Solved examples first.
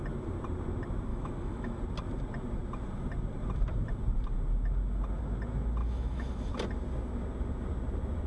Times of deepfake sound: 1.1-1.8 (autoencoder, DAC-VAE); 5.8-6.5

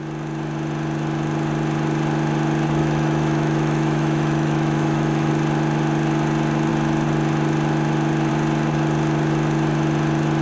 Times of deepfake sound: 2.8-5.3 (autoencoder, DAC-VAE)

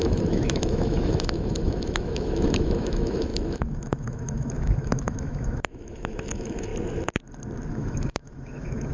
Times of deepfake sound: 0.0-6.7 (autoencoder, DAC-VAE); 7.7-8.9

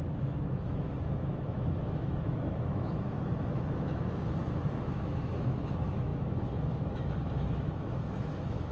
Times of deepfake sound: 0.0-8.7 (autoencoder, DAC-VAE)